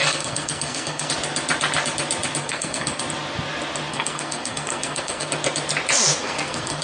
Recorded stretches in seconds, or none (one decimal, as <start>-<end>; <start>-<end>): 1.1-2.4; 3.0-3.9; 5.3-6.2